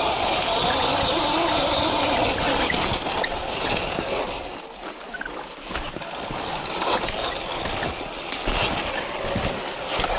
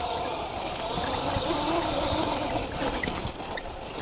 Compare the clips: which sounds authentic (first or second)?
first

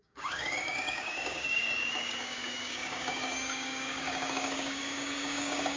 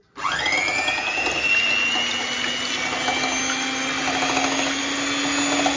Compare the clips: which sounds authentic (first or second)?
second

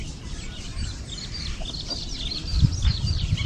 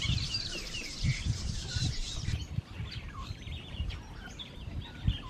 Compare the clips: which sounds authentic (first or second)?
first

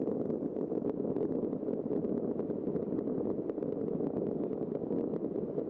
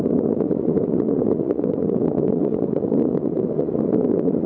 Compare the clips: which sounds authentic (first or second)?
first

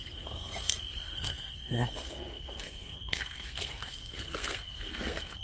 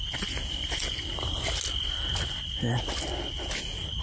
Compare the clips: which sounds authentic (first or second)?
second